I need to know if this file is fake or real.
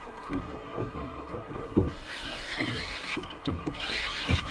fake